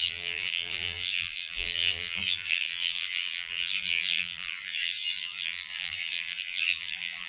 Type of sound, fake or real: fake